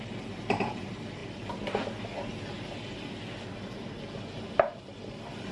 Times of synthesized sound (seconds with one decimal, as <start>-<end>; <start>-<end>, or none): none